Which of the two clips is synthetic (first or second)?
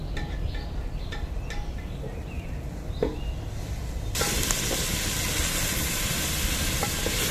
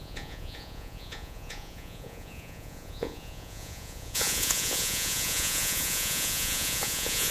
second